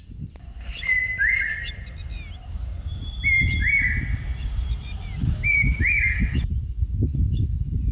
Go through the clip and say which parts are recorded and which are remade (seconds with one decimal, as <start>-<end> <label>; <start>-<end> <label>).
0.0-7.9 recorded